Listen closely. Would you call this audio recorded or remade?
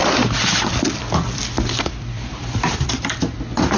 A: remade